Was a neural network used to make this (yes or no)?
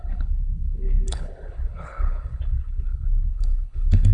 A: yes